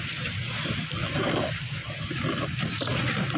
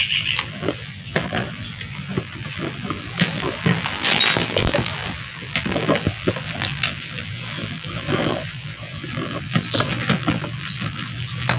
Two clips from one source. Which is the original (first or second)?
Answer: first